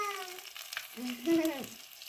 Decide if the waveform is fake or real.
real